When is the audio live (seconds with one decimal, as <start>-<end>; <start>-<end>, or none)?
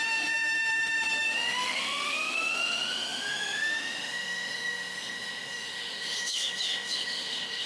none